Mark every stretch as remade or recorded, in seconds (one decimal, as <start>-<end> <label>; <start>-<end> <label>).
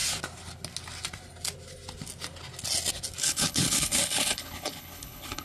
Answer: 0.0-3.2 recorded; 3.2-5.4 remade